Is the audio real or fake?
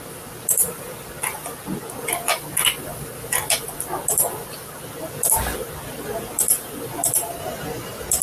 real